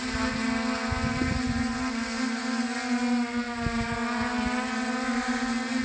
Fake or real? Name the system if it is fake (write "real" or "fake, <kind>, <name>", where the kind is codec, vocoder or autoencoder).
real